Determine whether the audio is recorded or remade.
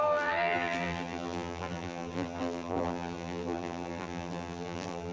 remade